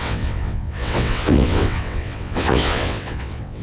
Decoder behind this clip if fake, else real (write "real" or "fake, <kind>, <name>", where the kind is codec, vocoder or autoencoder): fake, vocoder, WaveNeXt